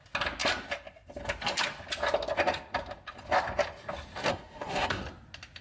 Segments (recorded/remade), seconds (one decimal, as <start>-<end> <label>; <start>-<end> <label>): 0.0-4.3 recorded; 4.3-5.0 remade; 5.0-5.6 recorded